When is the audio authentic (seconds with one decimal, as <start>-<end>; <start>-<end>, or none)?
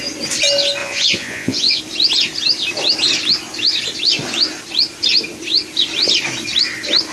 0.0-0.8; 1.8-7.1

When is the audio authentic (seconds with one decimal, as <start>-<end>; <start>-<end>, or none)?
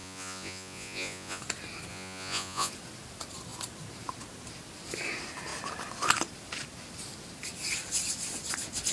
1.4-1.9; 2.7-8.9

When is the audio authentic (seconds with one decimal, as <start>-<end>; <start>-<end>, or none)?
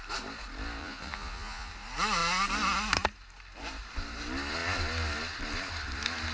0.0-0.8; 1.7-6.3